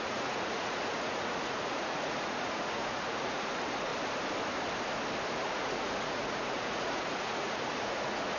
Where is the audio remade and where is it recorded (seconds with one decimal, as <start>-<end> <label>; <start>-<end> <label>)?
0.0-3.9 remade; 3.9-5.3 recorded; 5.3-8.4 remade